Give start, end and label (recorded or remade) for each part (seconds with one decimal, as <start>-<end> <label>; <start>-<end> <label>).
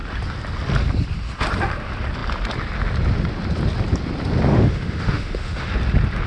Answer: 0.0-4.5 recorded; 4.5-5.7 remade; 5.7-6.3 recorded